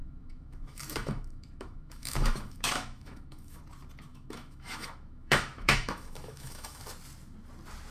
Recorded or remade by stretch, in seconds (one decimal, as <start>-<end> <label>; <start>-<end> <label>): 0.0-3.6 remade; 3.6-4.1 recorded; 4.1-6.8 remade; 6.8-7.9 recorded